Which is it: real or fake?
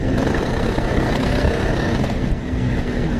fake